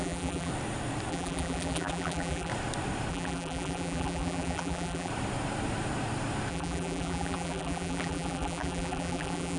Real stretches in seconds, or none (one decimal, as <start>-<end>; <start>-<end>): 0.5-1.1; 2.5-3.1; 5.1-6.5